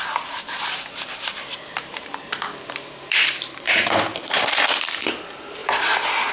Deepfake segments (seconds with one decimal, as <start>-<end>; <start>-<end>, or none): 1.5-4.6; 5.6-6.3